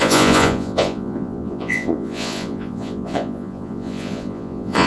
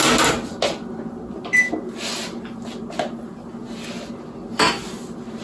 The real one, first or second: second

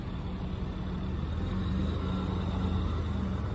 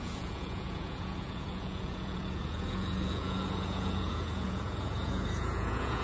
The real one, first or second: first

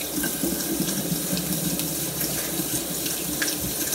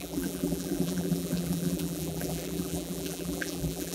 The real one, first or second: first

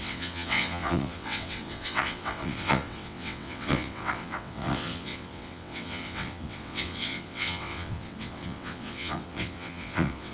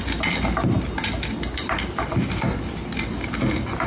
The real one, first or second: second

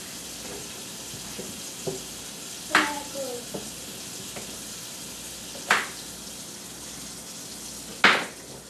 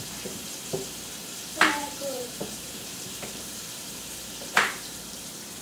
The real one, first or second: first